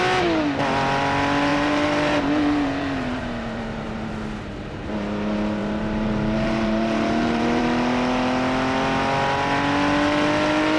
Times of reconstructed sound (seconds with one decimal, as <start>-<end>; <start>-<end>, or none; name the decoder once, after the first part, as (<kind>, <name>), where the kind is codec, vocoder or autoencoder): 1.5-4.1 (vocoder, BigVGAN v2); 5.6-7.6